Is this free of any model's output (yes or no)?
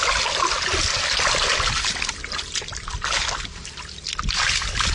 yes